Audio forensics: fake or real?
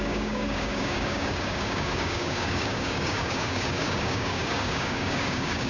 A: fake